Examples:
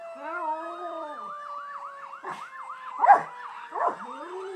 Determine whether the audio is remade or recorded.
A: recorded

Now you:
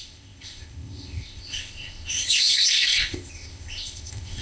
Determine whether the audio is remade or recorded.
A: remade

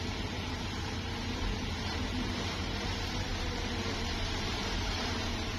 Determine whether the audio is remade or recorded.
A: remade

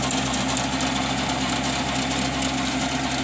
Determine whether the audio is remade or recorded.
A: recorded